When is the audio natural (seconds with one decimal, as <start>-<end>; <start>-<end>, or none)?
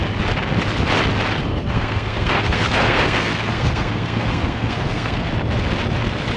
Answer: 0.0-1.5; 5.3-6.4